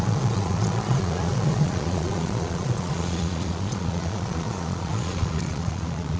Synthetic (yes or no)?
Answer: yes